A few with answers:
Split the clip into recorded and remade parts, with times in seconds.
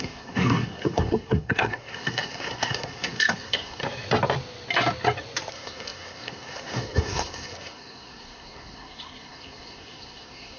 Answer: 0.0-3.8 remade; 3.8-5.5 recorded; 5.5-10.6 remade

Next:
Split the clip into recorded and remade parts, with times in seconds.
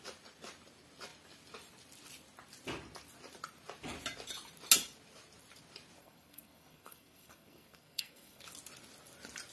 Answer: 0.0-6.0 recorded; 6.0-8.4 remade; 8.4-9.5 recorded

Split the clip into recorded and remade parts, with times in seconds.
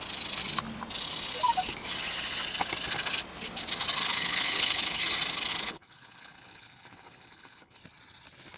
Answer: 0.0-4.0 recorded; 4.0-5.0 remade; 5.0-5.5 recorded; 5.5-7.8 remade; 7.8-8.6 recorded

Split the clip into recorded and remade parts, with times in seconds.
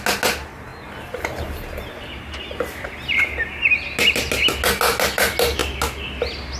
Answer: 0.0-6.6 recorded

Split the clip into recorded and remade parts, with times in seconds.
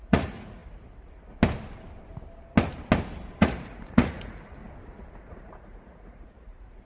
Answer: 0.0-0.6 remade; 0.6-3.4 recorded; 3.4-4.6 remade; 4.6-5.3 recorded; 5.3-6.9 remade